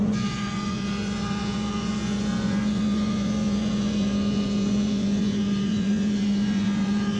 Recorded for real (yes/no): no